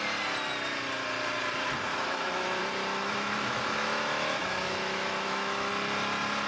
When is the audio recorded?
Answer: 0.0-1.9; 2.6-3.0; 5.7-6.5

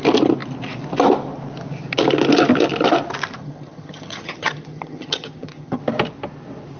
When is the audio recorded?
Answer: 0.0-3.4; 5.8-6.8

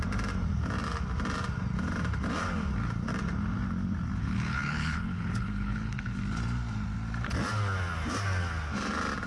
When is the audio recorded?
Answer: 0.0-4.2; 6.2-9.3